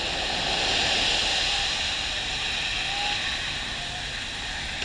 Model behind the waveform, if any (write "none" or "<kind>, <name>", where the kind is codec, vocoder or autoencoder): none